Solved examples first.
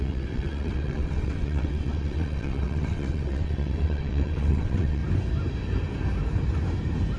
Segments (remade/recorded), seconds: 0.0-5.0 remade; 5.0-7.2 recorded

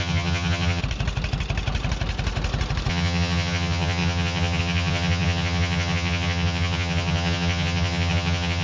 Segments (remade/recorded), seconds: 0.0-0.8 remade; 0.8-2.9 recorded; 2.9-8.6 remade

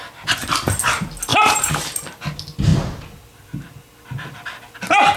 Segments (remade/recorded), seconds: 0.0-1.3 recorded; 1.3-1.8 remade; 1.8-5.2 recorded

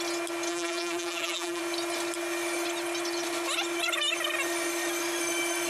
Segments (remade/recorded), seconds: 0.0-0.5 recorded; 0.5-1.6 remade; 1.6-5.7 recorded

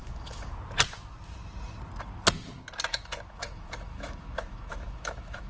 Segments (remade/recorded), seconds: 0.0-0.5 remade; 0.5-2.9 recorded; 2.9-5.5 remade